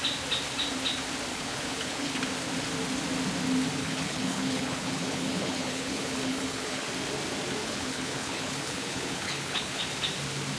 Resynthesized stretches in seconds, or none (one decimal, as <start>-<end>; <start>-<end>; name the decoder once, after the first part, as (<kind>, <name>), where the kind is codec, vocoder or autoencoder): 1.3-2.2 (codec, HILCodec); 3.8-6.9; 7.6-9.8